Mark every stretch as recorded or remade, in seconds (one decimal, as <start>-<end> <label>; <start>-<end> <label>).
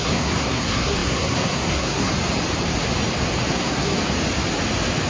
0.0-2.1 remade; 2.1-3.5 recorded; 3.5-4.0 remade; 4.0-5.1 recorded